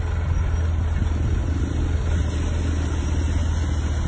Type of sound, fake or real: real